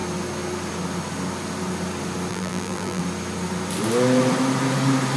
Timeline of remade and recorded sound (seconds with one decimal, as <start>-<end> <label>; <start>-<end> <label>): 0.0-2.3 recorded; 2.3-3.0 remade; 3.0-5.2 recorded